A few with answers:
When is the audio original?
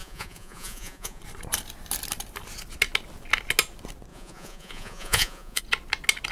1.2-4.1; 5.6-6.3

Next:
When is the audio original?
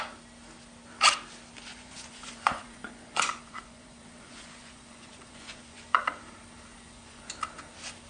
0.0-1.7; 6.0-6.7; 7.3-8.1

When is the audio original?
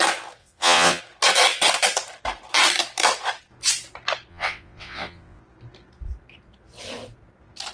0.0-0.4; 1.0-4.3; 5.4-7.7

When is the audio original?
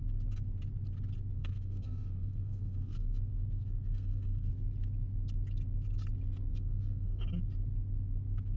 0.0-1.4; 4.5-6.5; 7.3-8.6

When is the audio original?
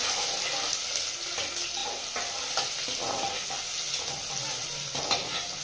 0.0-5.6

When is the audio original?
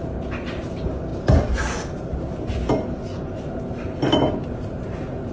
0.0-5.3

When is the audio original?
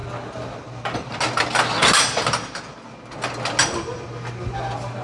0.0-5.0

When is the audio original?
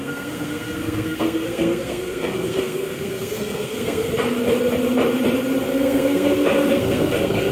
4.1-5.7